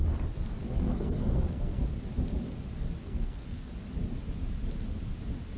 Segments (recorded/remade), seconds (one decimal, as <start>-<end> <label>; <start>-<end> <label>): 0.0-0.6 recorded; 0.6-1.8 remade; 1.8-3.0 recorded; 3.0-3.7 remade; 3.7-5.6 recorded